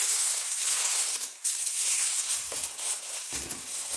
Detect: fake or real fake